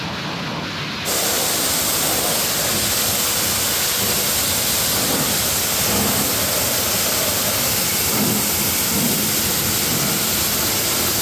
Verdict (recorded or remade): recorded